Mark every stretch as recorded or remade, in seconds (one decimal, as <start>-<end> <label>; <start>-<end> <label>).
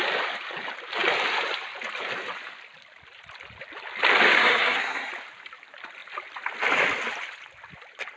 0.0-4.4 recorded; 4.4-5.1 remade; 5.1-8.2 recorded